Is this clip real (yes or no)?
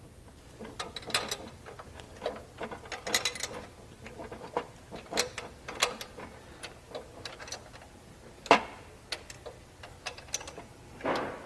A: yes